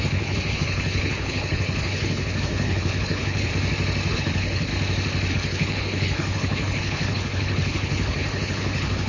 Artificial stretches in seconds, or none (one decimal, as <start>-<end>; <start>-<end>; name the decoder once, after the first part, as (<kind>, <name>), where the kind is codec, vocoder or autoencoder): 0.0-3.5 (codec, HILCodec); 4.1-4.7; 5.3-9.1